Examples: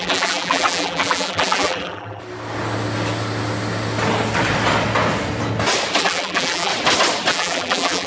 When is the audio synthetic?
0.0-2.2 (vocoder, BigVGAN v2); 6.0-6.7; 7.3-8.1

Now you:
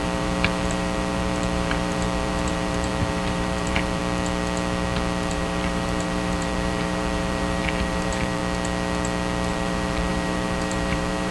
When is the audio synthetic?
0.0-4.0 (vocoder, BigVGAN v2); 5.3-8.4; 9.5-11.3

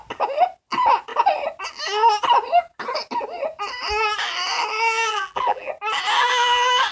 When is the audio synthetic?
5.1-5.7 (vocoder, BigVGAN v2)

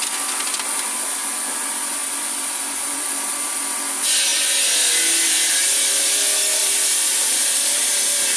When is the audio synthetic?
2.0-3.1 (vocoder, BigVGAN v2); 6.6-7.8

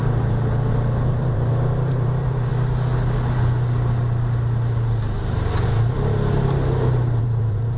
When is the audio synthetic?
0.7-2.5 (vocoder, BigVGAN v2); 7.2-7.8